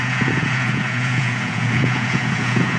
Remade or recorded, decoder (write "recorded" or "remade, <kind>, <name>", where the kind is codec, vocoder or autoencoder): remade, vocoder, Vocos